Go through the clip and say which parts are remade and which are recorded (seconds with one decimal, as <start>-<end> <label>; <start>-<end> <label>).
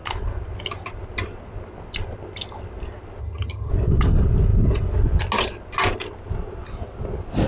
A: 0.0-3.2 recorded; 3.2-3.7 remade; 3.7-7.5 recorded